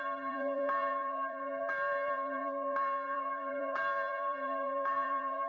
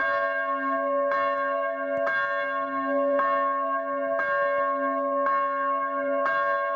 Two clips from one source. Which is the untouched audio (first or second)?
second